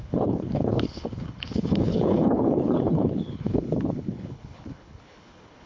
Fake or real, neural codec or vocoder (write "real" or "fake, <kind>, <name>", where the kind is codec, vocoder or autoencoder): fake, codec, HILCodec